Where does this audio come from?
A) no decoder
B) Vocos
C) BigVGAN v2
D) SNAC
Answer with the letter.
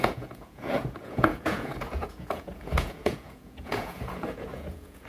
B